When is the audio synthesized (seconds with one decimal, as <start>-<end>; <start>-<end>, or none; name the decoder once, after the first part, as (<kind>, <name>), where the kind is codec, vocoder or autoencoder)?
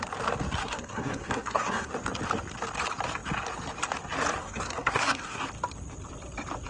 0.6-1.9 (codec, SNAC); 4.4-5.4